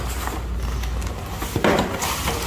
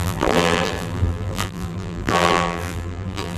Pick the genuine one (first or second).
first